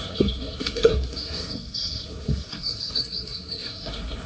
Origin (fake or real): fake